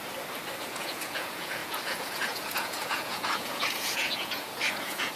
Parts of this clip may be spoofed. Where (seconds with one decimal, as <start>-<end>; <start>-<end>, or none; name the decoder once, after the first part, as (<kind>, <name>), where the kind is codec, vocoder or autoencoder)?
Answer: 0.7-5.2 (vocoder, Vocos)